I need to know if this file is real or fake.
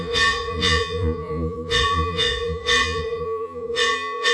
fake